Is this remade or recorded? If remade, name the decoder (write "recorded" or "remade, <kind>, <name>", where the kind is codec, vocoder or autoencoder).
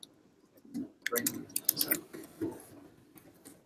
recorded